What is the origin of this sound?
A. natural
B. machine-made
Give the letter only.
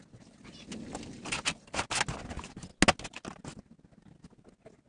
A